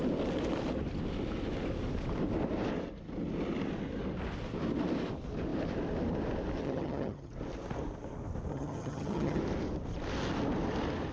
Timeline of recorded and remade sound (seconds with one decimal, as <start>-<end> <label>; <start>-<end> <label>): 0.0-6.6 recorded; 6.6-7.3 remade; 7.3-8.5 recorded; 8.5-9.4 remade; 9.4-11.1 recorded